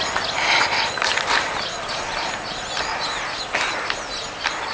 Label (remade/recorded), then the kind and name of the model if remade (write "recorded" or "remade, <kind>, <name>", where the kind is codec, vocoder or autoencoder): recorded